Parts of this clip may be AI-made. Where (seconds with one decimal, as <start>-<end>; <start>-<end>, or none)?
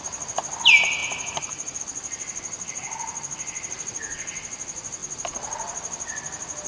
1.0-1.8